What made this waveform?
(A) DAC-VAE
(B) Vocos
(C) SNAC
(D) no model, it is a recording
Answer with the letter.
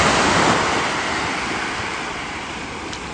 D